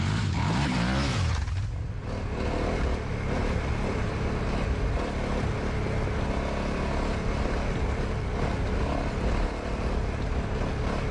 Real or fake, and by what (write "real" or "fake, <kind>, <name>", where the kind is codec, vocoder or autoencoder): real